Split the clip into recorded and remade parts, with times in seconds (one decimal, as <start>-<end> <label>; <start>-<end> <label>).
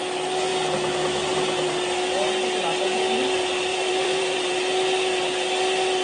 0.0-3.7 recorded; 3.7-4.5 remade; 4.5-6.0 recorded